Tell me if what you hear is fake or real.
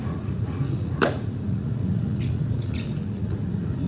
fake